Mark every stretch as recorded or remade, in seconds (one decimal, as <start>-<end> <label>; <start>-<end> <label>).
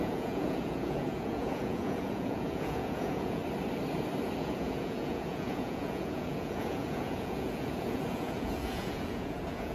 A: 0.0-3.4 remade; 3.4-4.4 recorded; 4.4-9.7 remade